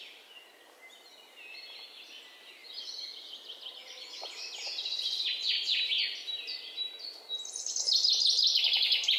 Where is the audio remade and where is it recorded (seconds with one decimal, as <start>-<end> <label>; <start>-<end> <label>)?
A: 0.0-9.2 recorded